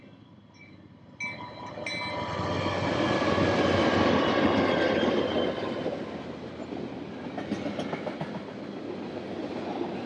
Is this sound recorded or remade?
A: recorded